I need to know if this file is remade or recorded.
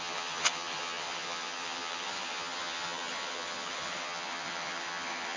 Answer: remade